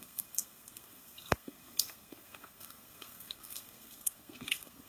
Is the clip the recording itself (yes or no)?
no